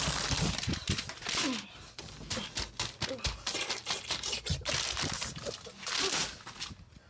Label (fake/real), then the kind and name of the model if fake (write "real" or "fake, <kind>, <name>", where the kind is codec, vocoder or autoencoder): real